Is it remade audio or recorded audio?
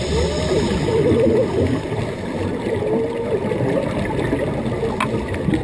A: recorded